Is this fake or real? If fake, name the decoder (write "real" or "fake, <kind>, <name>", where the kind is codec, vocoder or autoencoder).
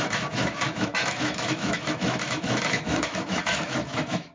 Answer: fake, autoencoder, DAC-VAE